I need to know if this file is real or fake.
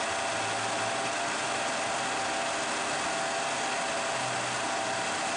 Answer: real